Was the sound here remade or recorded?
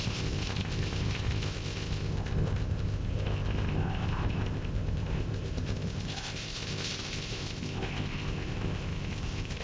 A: remade